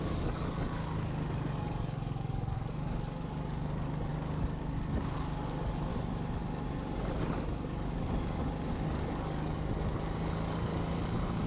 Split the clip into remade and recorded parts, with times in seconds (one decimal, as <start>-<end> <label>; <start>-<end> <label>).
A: 0.0-5.9 remade; 5.9-8.7 recorded; 8.7-10.7 remade; 10.7-11.5 recorded